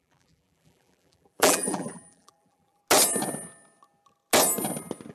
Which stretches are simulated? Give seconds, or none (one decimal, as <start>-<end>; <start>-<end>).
0.0-2.8